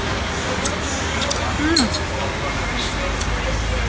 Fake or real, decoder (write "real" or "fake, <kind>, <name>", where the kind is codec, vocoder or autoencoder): real